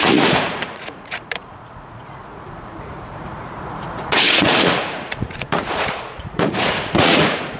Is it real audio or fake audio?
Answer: fake